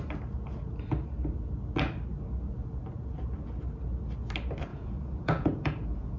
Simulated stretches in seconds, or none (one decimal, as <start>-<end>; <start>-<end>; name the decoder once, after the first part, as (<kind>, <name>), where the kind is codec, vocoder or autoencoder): 4.7-6.2 (vocoder, Vocos)